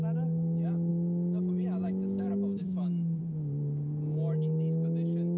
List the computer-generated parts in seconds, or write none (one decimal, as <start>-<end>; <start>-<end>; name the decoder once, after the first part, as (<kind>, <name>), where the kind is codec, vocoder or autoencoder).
0.9-3.2 (autoencoder, DAC-VAE)